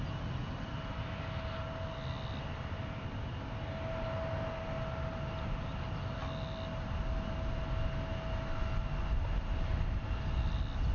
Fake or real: real